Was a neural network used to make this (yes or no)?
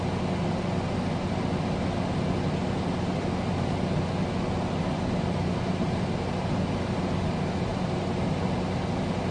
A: no